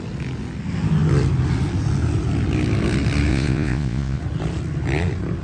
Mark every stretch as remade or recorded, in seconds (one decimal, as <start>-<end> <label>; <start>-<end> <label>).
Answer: 0.0-3.3 recorded; 3.3-4.2 remade; 4.2-5.4 recorded